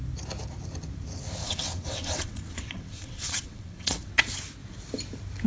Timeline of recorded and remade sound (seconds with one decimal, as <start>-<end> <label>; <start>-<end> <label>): 0.0-1.4 recorded; 1.4-4.1 remade; 4.1-5.5 recorded